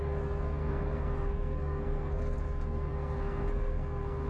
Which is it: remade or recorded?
remade